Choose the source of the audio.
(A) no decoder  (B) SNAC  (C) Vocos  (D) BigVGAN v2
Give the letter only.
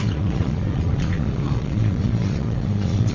C